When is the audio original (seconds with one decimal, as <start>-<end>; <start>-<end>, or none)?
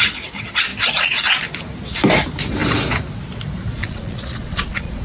0.0-3.8